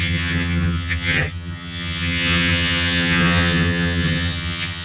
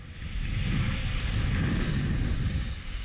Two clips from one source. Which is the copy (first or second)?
first